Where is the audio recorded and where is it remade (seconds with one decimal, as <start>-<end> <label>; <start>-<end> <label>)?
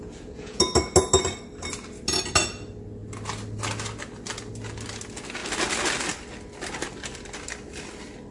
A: 0.0-0.6 remade; 0.6-8.3 recorded